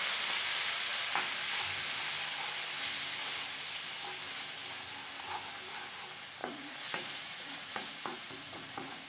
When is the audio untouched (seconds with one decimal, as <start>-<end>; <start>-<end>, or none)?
0.0-6.4